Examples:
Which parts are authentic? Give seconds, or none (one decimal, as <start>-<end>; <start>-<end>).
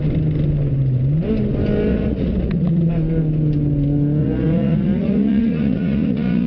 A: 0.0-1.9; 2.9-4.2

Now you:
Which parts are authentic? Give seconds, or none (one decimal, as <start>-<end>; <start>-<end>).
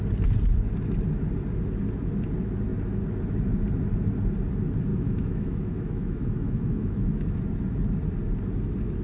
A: 0.0-4.9; 7.4-9.0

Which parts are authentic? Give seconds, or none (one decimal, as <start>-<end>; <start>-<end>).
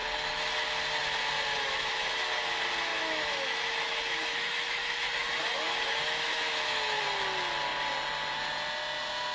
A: 0.0-1.5; 2.5-2.9; 7.0-9.3